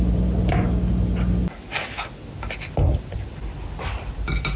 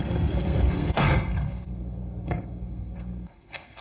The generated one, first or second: second